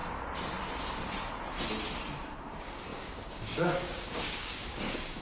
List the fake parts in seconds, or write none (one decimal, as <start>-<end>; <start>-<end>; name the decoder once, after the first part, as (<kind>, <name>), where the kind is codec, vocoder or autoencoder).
2.4-5.2 (codec, DAC)